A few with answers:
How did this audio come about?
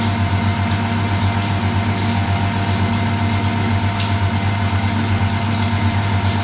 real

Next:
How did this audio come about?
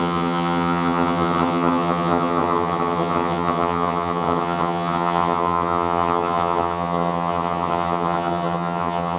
fake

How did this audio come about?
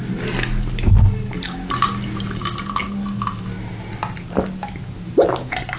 real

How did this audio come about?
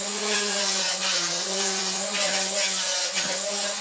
fake